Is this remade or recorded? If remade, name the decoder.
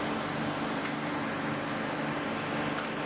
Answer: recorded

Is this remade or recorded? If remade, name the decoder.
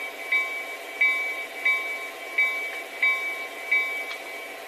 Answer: recorded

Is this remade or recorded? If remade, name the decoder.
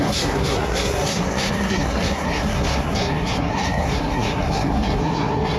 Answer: remade, codec, SNAC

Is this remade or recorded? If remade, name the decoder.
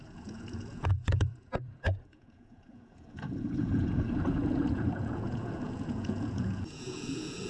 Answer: remade, vocoder, Vocos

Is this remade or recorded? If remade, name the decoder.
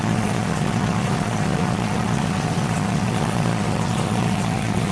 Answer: remade, vocoder, Vocos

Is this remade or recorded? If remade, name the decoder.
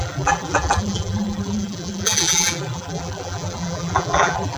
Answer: remade, vocoder, BigVGAN v2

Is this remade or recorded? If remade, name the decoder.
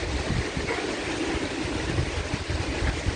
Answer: recorded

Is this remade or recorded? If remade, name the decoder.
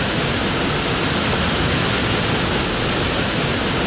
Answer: recorded